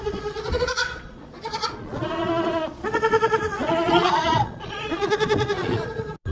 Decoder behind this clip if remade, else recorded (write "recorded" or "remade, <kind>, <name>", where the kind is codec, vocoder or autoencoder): remade, vocoder, Vocos